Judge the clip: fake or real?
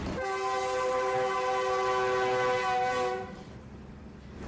real